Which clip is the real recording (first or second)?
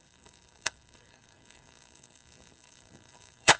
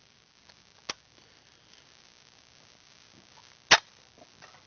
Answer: second